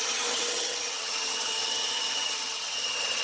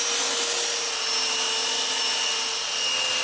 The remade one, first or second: first